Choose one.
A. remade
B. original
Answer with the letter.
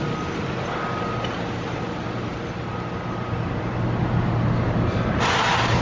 B